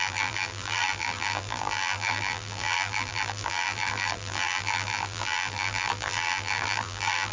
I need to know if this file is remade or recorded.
remade